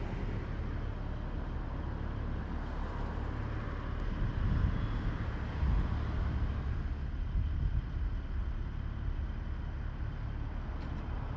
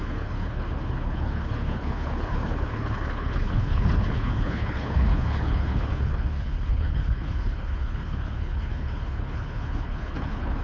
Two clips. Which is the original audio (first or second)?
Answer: first